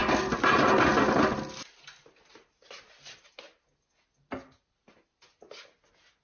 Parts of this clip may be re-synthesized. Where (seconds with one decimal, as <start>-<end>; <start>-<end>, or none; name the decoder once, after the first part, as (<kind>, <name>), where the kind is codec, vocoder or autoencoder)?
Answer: none